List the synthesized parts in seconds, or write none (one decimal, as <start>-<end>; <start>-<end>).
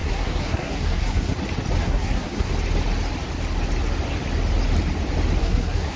0.0-1.3; 1.8-2.5; 5.4-6.0